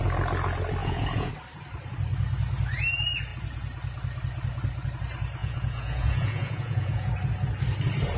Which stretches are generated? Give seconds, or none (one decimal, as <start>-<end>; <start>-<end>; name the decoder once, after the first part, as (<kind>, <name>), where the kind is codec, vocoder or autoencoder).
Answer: 0.8-1.3 (vocoder, Vocos); 5.4-7.1